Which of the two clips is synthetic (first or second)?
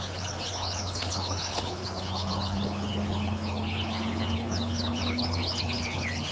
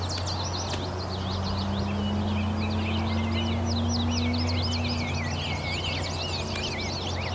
first